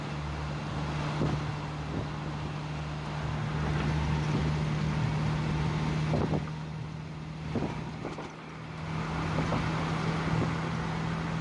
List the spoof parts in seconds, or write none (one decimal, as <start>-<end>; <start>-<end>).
none